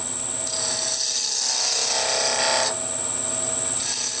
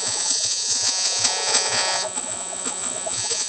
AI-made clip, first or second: second